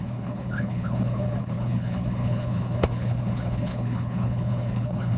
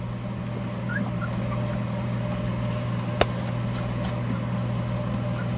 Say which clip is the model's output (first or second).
first